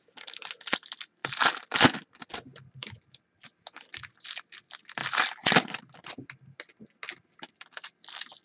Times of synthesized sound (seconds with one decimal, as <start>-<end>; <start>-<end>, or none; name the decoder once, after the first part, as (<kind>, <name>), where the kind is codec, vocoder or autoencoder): 1.2-1.9 (vocoder, BigVGAN v2); 2.8-3.6; 5.0-6.1